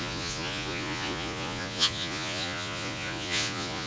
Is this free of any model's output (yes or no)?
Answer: no